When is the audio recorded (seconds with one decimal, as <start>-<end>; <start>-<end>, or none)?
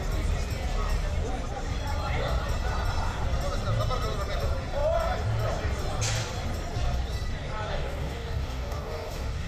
0.0-7.7